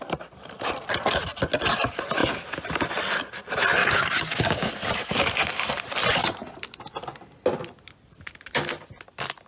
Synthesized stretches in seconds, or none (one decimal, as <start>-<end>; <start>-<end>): 3.8-4.7